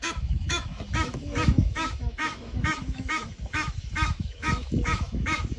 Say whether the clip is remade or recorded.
remade